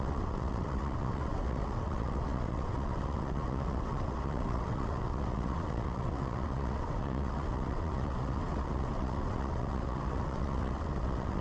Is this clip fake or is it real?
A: fake